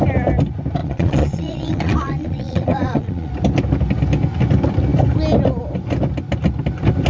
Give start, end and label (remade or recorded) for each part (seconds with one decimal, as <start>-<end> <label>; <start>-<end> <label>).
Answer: 0.0-0.8 recorded; 0.8-3.3 remade; 3.3-7.1 recorded